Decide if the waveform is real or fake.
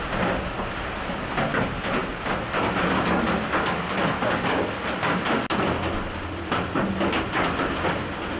real